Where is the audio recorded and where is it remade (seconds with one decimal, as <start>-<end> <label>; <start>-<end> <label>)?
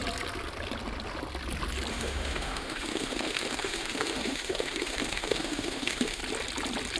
0.0-1.9 recorded; 1.9-6.2 remade; 6.2-7.0 recorded